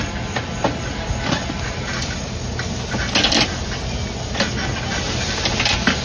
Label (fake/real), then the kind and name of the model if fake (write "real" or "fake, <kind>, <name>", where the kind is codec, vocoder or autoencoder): real